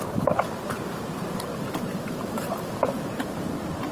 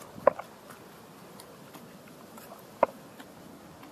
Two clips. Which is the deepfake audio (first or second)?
first